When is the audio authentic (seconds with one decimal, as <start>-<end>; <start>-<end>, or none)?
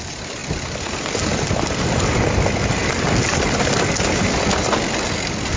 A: 0.0-5.6